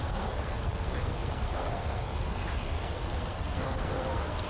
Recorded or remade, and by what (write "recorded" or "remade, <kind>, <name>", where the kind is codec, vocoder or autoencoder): remade, codec, SNAC